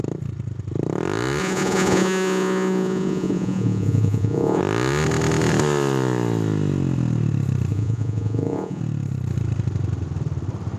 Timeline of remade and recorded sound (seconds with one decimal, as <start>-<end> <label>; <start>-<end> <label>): 0.0-1.4 recorded; 1.4-4.6 remade; 4.6-7.7 recorded; 7.7-8.8 remade; 8.8-10.8 recorded